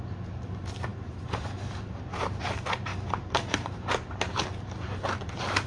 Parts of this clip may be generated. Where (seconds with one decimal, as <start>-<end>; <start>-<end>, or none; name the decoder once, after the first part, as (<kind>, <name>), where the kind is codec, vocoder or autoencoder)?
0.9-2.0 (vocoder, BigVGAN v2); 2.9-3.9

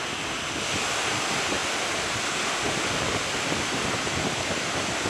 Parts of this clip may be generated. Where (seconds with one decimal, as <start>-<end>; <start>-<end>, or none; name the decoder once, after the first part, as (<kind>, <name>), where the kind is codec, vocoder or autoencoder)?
1.6-2.5 (vocoder, BigVGAN v2)

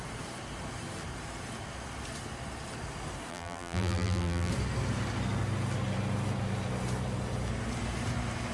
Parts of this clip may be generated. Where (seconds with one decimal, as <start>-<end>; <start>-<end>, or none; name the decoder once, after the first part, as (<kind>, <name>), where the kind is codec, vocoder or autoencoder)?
3.3-4.5 (vocoder, BigVGAN v2)

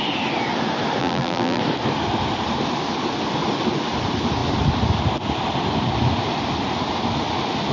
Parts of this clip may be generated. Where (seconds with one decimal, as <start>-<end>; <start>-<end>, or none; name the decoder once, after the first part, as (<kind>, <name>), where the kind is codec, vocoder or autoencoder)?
1.0-1.6 (vocoder, BigVGAN v2)